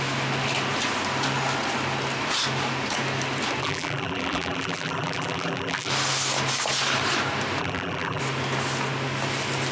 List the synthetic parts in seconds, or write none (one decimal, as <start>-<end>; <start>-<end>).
3.6-5.9; 7.6-8.2